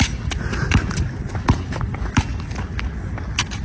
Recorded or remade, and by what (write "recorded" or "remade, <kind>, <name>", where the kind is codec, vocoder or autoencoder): recorded